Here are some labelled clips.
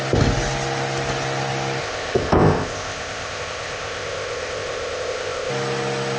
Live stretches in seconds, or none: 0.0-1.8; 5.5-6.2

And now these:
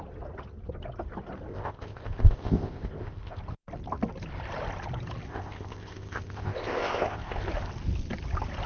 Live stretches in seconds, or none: 0.0-1.5; 3.4-5.3; 7.4-8.7